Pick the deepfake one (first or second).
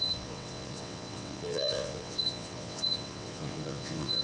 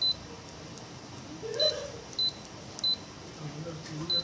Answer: first